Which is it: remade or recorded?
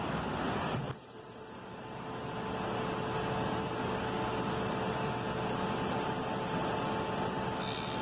recorded